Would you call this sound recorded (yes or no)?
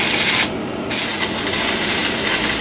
yes